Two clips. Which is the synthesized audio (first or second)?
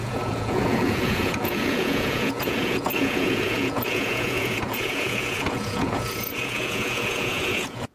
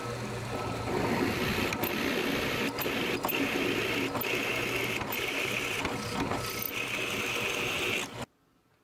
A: first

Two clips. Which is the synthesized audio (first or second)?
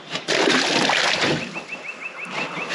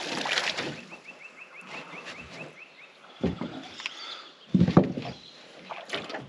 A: second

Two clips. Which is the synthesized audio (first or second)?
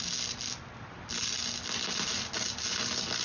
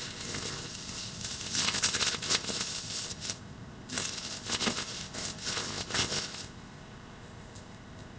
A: second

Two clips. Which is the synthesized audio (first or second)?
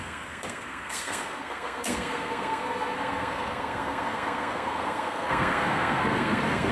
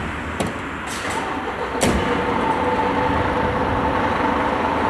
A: first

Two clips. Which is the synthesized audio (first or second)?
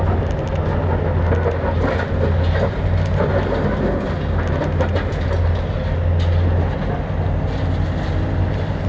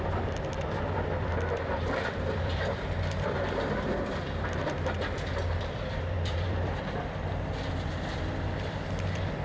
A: second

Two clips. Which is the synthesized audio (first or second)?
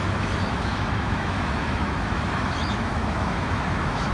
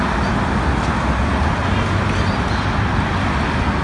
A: first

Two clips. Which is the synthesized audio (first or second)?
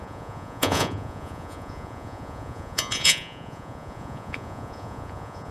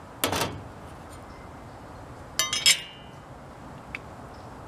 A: first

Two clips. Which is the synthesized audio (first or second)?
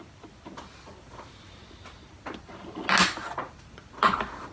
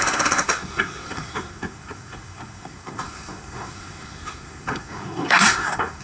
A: second